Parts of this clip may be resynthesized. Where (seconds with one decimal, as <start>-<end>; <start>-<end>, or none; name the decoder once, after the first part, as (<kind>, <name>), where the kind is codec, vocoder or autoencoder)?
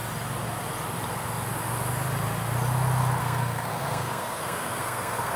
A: 3.2-5.4 (codec, SNAC)